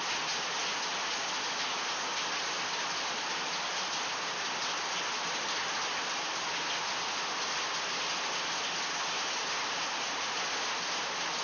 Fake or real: real